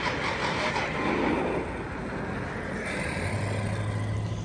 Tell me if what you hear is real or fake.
real